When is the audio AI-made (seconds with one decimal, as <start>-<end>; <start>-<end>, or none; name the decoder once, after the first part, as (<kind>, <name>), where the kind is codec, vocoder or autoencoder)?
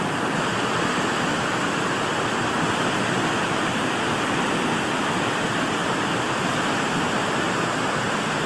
none